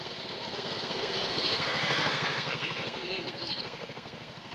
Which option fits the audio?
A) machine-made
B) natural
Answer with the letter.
A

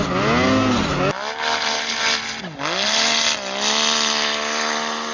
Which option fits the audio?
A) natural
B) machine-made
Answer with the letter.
A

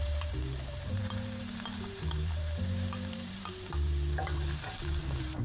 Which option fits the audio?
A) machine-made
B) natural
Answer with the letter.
A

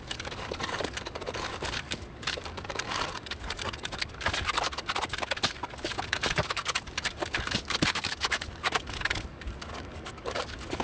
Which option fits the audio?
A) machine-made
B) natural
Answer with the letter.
A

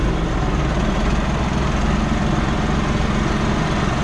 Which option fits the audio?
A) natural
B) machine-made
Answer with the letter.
A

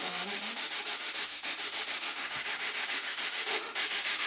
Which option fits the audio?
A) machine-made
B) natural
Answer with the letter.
A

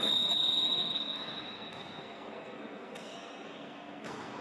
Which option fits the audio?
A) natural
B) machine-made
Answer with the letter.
B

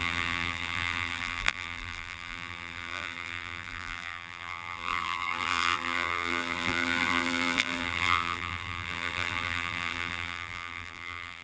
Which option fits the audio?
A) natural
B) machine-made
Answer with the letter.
B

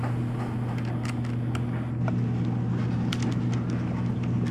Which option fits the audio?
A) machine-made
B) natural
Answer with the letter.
B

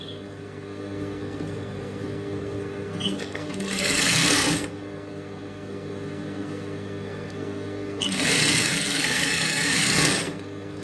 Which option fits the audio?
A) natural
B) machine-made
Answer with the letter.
B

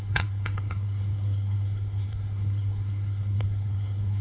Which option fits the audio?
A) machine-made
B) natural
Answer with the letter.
A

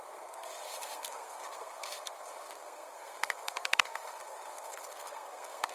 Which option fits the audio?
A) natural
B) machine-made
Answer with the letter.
B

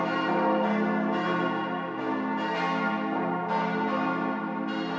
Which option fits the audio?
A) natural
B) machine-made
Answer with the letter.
A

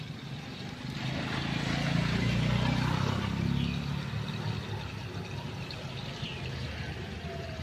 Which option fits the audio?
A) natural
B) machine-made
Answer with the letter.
A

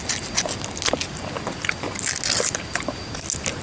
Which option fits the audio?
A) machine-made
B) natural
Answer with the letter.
B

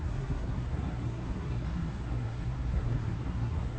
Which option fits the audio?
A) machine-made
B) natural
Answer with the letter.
A